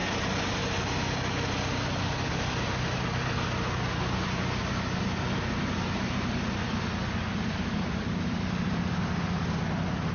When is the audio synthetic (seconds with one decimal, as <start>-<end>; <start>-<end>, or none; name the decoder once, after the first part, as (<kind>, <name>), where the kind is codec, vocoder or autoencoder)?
none